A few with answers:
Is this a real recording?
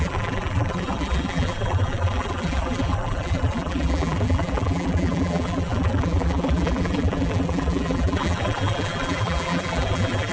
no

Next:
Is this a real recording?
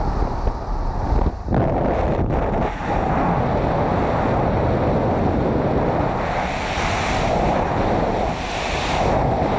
yes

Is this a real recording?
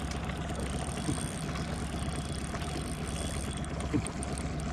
yes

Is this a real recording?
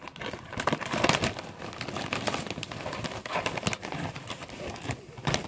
yes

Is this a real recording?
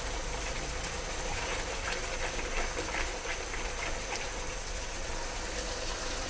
yes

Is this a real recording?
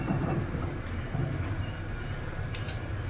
no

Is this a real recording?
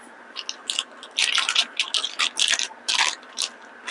yes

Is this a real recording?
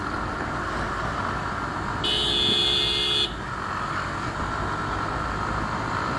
yes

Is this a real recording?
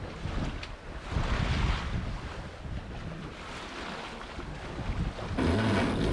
yes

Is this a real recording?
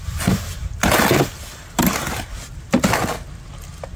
yes